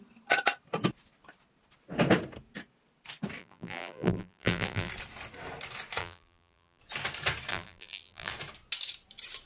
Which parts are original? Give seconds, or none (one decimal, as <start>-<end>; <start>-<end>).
0.0-3.4; 4.9-6.0; 6.8-7.5; 8.3-9.5

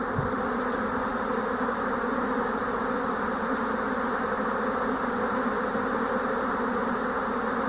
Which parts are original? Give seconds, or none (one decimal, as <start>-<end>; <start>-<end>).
1.1-2.1; 2.8-7.7

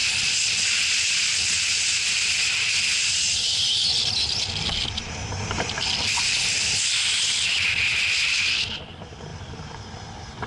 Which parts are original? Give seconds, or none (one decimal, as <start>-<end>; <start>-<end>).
0.0-9.3; 9.9-10.5